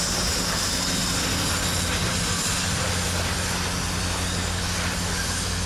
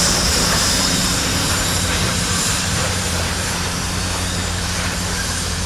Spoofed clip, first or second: second